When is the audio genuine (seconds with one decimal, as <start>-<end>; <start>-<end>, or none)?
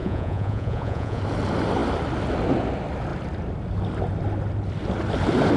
1.2-5.6